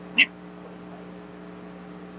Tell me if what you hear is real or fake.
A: real